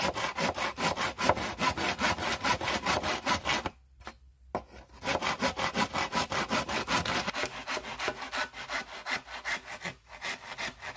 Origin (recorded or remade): recorded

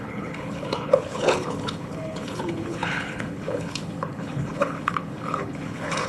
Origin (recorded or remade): remade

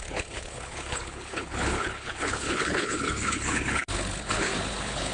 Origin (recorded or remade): remade